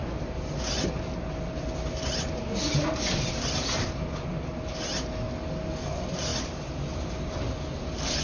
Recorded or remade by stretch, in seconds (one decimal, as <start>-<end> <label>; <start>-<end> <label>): 0.0-8.2 recorded